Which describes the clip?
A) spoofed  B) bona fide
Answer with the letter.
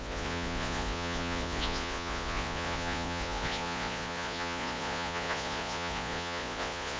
A